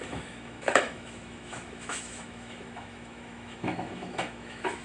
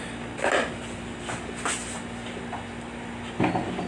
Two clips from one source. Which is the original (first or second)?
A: second